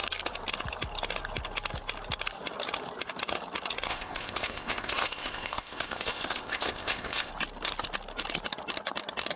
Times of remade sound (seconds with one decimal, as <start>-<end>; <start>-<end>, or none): 3.9-7.3